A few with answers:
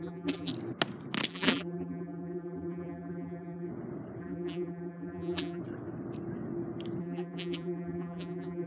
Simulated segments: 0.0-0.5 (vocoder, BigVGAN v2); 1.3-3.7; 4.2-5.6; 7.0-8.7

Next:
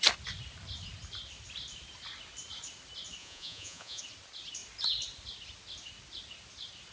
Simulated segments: 3.2-4.0 (vocoder, Vocos)

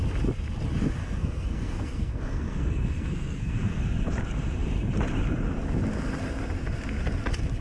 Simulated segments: 1.0-3.8 (codec, SNAC)

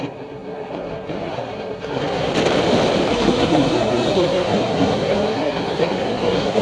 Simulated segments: 0.0-2.3 (codec, SNAC); 3.1-6.6

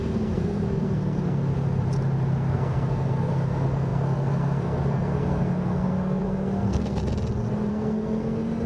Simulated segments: 0.0-1.5 (codec, SNAC); 2.3-7.0; 7.7-8.7

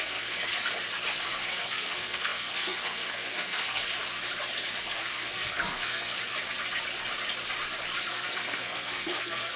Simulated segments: 0.0-0.5 (codec, SNAC); 1.5-3.8; 4.8-6.2; 8.1-9.6